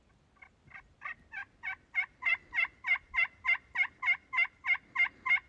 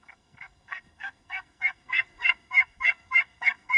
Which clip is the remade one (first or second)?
second